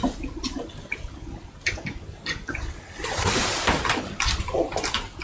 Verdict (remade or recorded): recorded